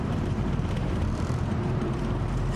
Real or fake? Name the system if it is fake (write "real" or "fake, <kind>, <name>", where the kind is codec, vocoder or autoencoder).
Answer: fake, vocoder, BigVGAN v2